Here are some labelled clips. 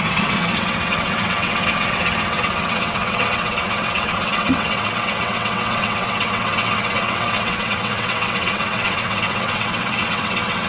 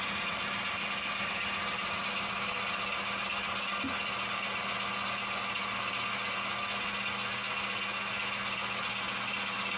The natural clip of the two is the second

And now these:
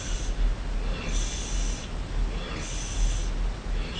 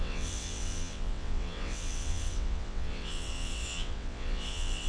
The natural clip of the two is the first